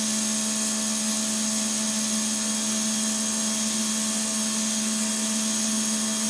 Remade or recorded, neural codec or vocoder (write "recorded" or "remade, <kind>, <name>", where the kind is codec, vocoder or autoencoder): recorded